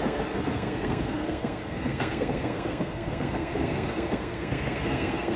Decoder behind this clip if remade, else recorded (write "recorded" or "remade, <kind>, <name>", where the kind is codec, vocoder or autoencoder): remade, codec, SNAC